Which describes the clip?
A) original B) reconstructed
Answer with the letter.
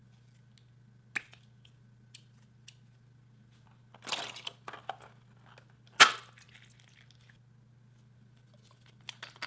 A